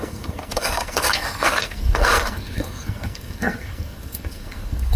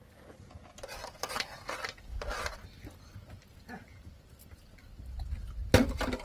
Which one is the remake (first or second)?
first